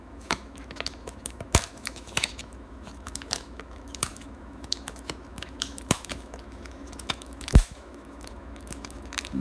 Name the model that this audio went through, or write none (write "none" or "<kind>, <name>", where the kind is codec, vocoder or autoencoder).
autoencoder, DAC-VAE